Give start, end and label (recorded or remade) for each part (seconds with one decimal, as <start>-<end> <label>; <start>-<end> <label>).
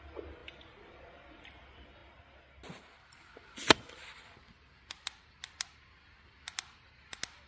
0.0-7.5 recorded